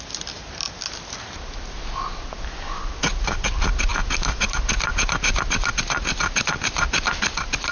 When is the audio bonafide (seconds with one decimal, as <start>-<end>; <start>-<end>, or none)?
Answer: 0.0-7.7